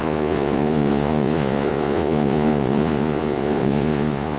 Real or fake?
fake